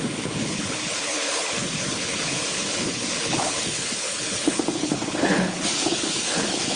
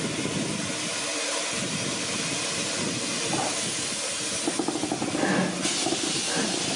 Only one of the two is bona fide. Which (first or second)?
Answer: second